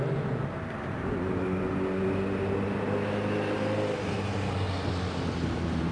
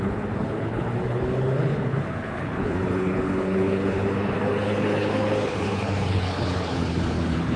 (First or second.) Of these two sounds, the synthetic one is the second